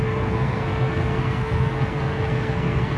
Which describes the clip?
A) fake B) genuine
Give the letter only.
A